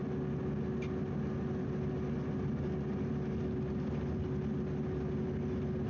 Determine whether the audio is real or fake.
real